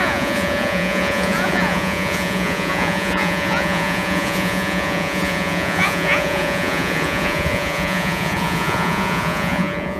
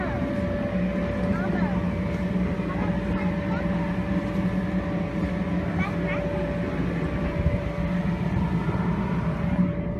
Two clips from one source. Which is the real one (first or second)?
second